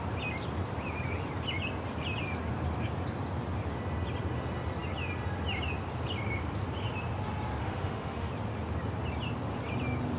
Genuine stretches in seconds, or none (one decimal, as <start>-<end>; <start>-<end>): 0.0-7.6; 8.3-10.2